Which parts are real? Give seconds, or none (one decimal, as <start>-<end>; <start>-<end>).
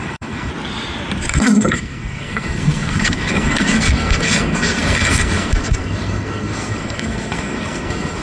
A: 0.5-1.3